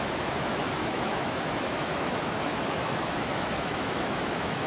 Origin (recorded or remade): remade